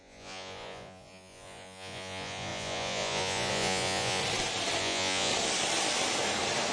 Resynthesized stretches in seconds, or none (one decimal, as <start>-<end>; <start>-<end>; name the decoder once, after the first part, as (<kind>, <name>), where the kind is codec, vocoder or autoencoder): 0.0-4.2 (vocoder, Vocos); 4.8-5.3